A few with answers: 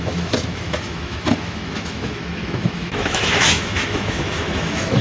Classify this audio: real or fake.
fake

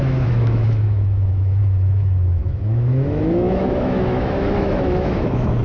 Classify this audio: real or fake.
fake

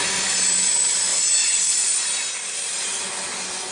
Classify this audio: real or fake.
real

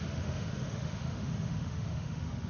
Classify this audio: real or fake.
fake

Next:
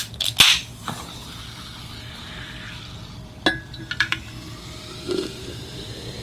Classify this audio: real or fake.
real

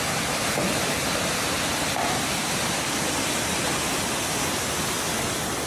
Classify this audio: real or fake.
real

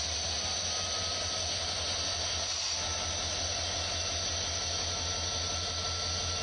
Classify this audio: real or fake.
real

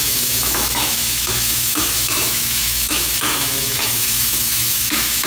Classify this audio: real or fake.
fake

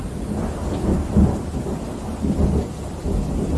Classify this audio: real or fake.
real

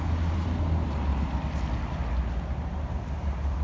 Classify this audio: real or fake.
real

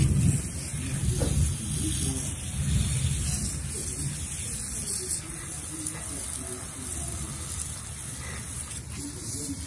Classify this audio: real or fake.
real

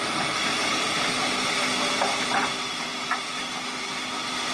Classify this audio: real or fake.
real